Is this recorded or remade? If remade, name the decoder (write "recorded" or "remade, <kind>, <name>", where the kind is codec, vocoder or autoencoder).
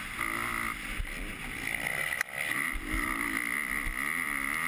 recorded